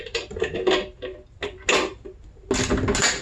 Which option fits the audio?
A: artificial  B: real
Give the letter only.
B